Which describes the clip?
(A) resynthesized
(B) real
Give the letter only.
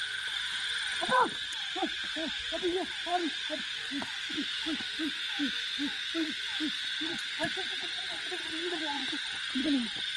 A